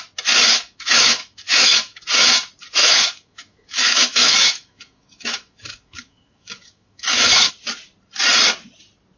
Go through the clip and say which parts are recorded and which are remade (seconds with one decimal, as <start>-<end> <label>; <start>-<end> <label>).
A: 0.0-0.5 recorded; 0.5-2.0 remade; 2.0-2.8 recorded; 2.8-7.5 remade; 7.5-9.2 recorded